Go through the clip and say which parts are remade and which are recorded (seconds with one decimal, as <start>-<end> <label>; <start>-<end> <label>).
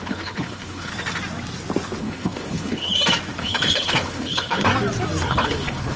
0.0-0.9 remade; 0.9-2.0 recorded; 2.0-2.9 remade; 2.9-3.4 recorded; 3.4-4.7 remade; 4.7-5.3 recorded; 5.3-6.0 remade